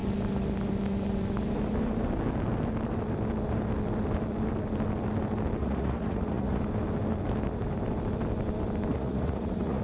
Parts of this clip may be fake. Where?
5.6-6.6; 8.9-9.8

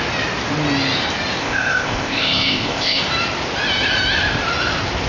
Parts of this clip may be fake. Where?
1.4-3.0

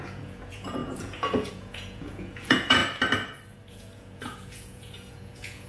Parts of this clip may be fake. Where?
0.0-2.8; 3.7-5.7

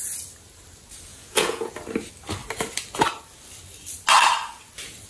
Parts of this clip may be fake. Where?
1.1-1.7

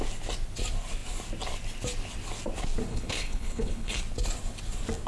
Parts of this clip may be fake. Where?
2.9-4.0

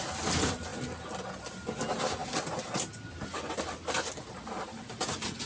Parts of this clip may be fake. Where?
none

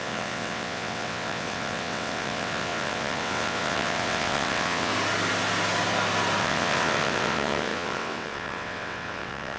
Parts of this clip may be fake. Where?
0.0-4.9; 6.4-9.6